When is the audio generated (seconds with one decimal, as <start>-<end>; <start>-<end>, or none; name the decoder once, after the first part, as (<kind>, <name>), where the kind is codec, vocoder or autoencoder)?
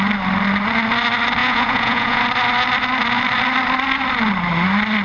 1.4-2.2 (vocoder, Vocos)